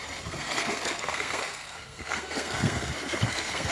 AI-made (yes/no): yes